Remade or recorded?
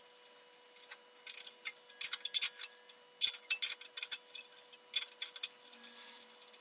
recorded